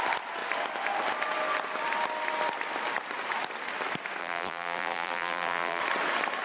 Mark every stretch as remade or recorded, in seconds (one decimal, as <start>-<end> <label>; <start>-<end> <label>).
0.0-4.2 recorded; 4.2-5.8 remade; 5.8-6.4 recorded